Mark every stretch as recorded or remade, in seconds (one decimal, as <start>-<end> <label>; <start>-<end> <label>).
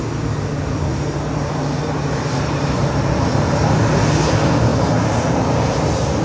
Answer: 0.0-0.9 recorded; 0.9-4.2 remade; 4.2-4.7 recorded; 4.7-5.3 remade; 5.3-6.2 recorded